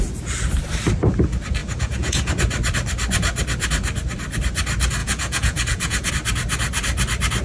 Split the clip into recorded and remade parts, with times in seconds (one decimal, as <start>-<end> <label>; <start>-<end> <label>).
0.0-1.6 recorded; 1.6-2.3 remade; 2.3-5.0 recorded; 5.0-6.1 remade; 6.1-7.4 recorded